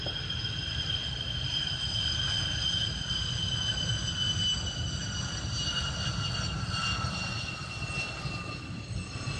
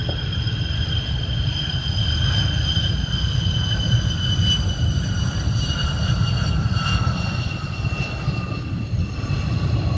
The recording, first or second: first